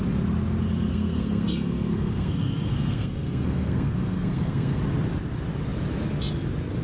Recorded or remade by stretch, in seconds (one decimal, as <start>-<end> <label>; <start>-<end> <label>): 0.0-0.9 recorded; 0.9-4.8 remade; 4.8-6.8 recorded